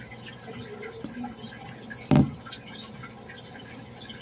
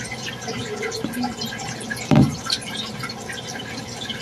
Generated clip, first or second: second